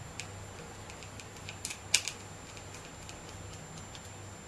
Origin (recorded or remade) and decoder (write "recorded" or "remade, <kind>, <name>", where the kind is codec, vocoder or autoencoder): recorded